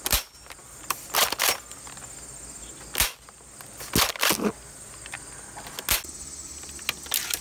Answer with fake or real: real